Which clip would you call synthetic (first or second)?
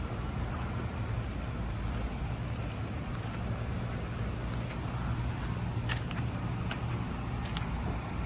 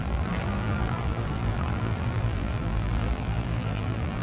second